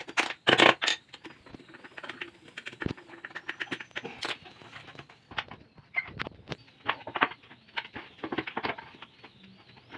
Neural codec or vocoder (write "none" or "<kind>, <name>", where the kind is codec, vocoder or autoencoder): none